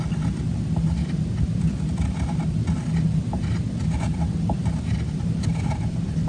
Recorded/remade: recorded